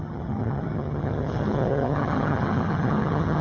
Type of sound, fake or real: fake